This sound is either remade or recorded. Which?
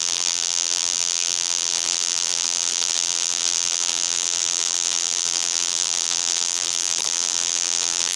remade